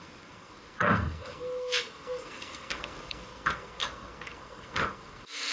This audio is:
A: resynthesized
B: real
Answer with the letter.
A